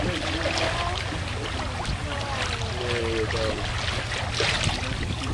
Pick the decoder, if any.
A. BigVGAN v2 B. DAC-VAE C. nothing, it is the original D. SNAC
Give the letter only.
C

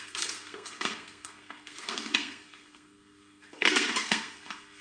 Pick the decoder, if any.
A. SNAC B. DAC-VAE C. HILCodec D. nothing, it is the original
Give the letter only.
A